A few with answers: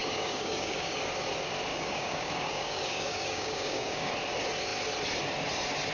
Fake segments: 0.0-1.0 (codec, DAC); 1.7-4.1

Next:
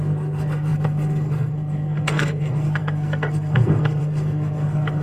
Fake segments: 0.0-5.0 (codec, SNAC)

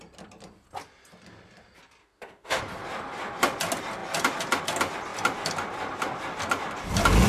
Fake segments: 2.0-2.6 (autoencoder, DAC-VAE)

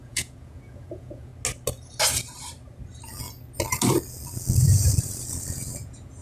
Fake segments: 0.0-1.3 (vocoder, Vocos); 5.0-6.2